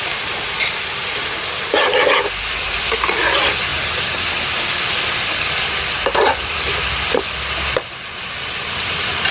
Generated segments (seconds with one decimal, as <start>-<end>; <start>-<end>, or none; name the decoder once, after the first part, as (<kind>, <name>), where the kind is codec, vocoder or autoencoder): none